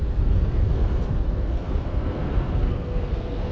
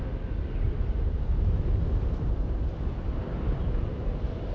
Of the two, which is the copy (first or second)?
first